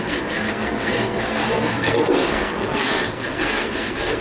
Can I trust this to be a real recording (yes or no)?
no